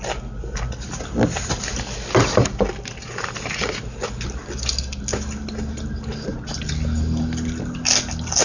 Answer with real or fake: real